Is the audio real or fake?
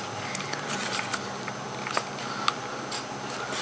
real